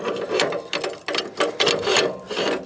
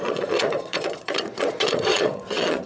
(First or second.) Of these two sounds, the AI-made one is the second